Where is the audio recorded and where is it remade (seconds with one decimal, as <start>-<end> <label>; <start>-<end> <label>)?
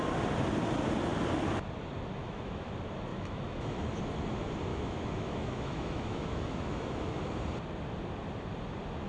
0.0-2.2 recorded; 2.2-2.7 remade; 2.7-3.1 recorded; 3.1-4.0 remade; 4.0-4.7 recorded; 4.7-7.2 remade; 7.2-9.1 recorded